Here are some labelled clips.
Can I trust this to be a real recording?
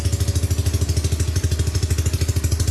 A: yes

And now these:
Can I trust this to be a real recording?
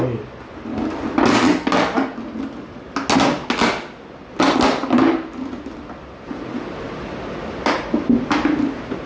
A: yes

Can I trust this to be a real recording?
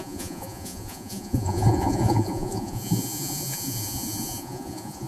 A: no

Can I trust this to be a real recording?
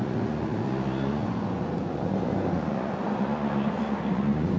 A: no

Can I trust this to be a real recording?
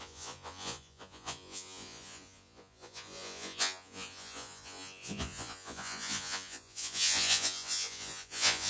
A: no